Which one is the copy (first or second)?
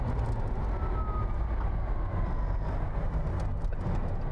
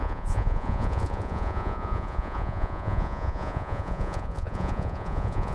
second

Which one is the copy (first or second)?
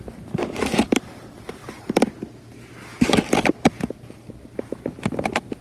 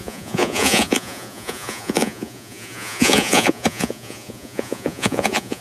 second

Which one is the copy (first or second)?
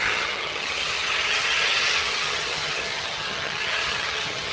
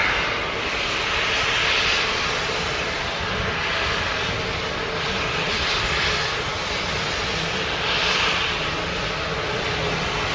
first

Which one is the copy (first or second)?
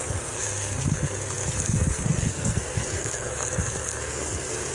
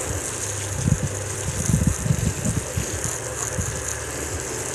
first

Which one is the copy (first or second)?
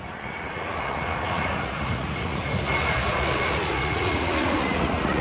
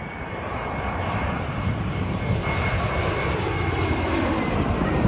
first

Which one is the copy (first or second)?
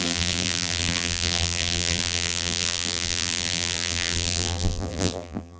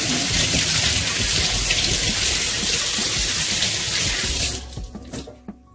first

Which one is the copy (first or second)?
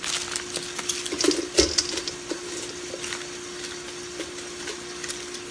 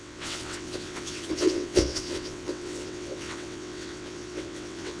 second